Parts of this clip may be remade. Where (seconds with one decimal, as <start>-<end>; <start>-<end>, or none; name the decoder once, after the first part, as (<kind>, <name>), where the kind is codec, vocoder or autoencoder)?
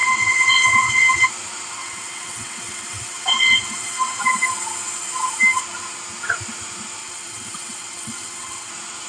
0.0-1.3 (vocoder, WaveNeXt); 1.8-4.2; 7.0-8.7